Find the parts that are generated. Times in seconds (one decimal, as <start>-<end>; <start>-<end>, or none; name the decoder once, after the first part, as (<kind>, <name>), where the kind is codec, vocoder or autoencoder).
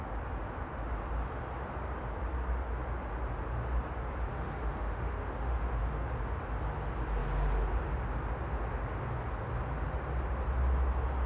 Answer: 4.3-6.1 (autoencoder, DAC-VAE)